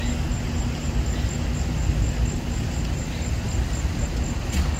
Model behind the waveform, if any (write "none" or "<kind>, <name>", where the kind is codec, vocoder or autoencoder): none